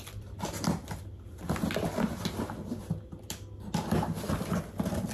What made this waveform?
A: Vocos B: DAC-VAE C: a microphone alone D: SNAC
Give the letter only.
C